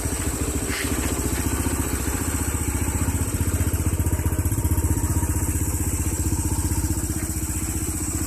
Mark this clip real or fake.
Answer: fake